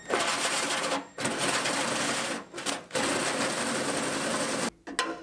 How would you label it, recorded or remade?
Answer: recorded